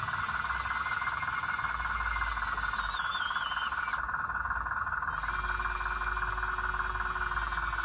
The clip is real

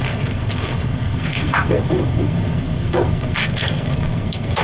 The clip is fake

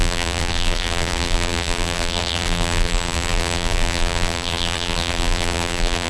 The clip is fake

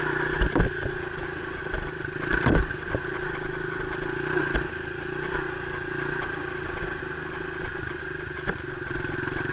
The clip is real